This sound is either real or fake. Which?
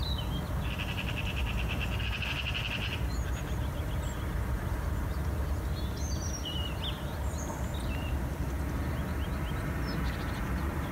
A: real